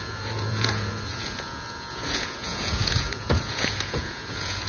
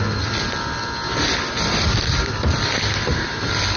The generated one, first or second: first